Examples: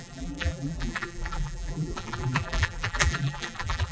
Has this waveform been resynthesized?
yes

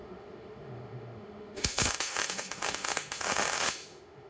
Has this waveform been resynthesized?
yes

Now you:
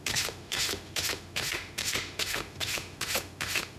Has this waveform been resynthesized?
yes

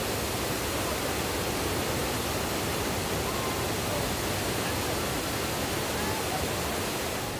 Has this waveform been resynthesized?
no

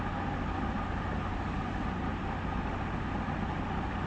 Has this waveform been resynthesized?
no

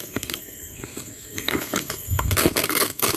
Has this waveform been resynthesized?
yes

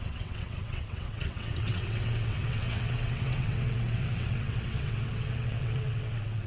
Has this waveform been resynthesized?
yes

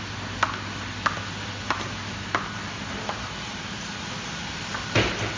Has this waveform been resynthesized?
no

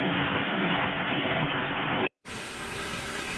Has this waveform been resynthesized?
yes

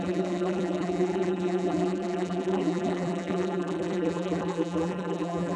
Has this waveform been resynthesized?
yes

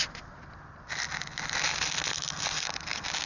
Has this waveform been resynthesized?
no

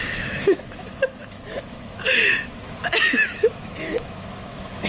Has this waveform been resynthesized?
yes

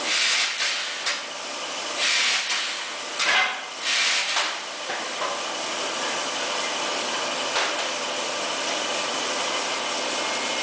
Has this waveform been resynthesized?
no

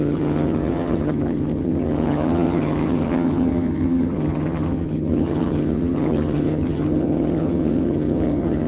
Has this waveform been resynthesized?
yes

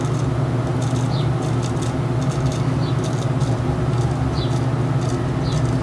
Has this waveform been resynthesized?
no